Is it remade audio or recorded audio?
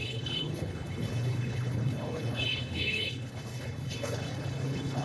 remade